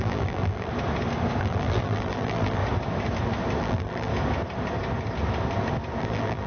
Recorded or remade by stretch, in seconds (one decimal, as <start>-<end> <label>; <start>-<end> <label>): 0.0-0.7 remade; 0.7-1.4 recorded; 1.4-2.6 remade; 2.6-3.6 recorded; 3.6-4.1 remade; 4.1-6.0 recorded; 6.0-6.5 remade